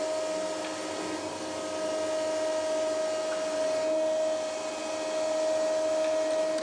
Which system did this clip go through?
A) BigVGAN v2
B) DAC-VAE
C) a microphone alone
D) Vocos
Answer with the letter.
C